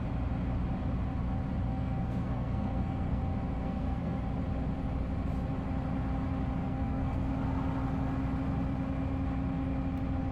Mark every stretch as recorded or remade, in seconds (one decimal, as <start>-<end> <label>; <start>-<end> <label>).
0.0-1.7 recorded; 1.7-3.2 remade; 3.2-3.6 recorded; 3.6-4.2 remade; 4.2-6.6 recorded; 6.6-7.3 remade; 7.3-10.3 recorded